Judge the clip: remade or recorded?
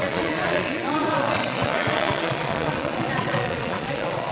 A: remade